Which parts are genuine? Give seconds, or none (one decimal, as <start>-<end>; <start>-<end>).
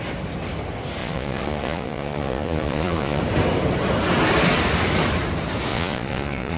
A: 0.0-1.0; 3.2-5.7